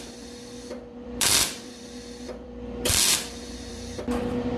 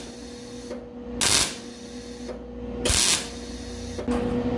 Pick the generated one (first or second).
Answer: first